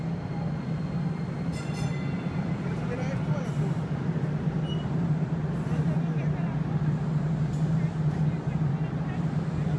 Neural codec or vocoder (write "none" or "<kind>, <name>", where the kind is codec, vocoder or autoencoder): none